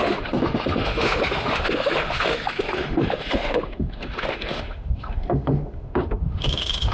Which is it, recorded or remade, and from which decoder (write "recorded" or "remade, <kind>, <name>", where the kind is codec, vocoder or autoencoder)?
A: remade, autoencoder, DAC-VAE